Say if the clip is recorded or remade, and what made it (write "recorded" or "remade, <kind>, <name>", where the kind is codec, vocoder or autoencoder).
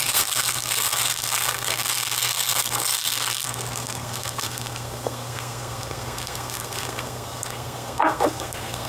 remade, codec, SNAC